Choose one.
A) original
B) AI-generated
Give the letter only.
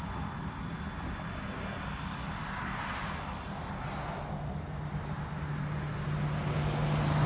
A